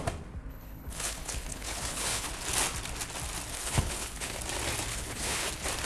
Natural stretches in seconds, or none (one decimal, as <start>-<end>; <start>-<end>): 0.0-0.5; 2.3-3.5; 4.4-4.9; 5.5-5.9